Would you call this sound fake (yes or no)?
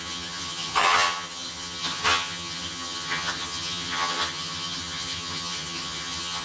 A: yes